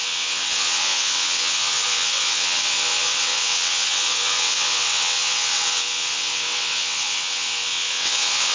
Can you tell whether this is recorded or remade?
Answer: remade